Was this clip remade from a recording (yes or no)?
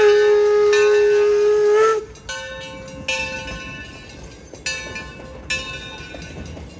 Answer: no